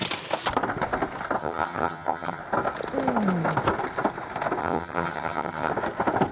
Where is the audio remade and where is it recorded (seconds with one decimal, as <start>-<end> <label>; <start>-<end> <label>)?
0.0-1.4 recorded; 1.4-2.4 remade; 2.4-4.6 recorded; 4.6-5.7 remade; 5.7-6.3 recorded